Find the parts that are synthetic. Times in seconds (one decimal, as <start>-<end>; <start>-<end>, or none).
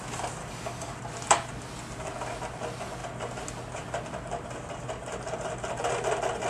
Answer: 0.4-1.0